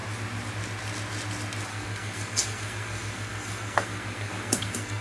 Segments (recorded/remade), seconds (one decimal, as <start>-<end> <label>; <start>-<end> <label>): 0.0-1.7 recorded; 1.7-5.0 remade